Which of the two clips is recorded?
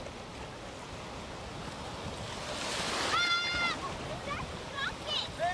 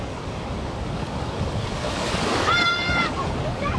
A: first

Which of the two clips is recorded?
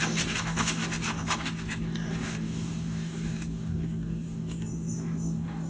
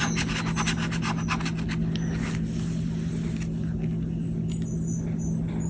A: second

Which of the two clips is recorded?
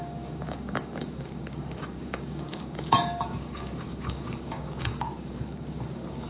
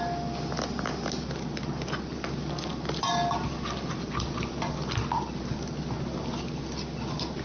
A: second